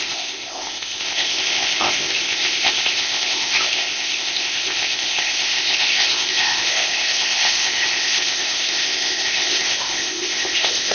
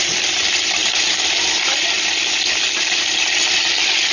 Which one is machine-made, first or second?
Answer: first